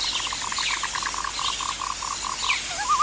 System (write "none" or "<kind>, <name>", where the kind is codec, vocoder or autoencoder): none